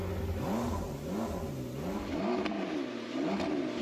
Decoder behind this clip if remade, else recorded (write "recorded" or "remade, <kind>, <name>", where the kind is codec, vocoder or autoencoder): recorded